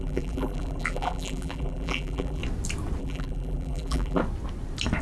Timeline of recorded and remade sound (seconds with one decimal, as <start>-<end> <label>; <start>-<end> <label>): 0.0-2.4 remade; 2.4-3.0 recorded; 3.0-4.2 remade; 4.2-5.0 recorded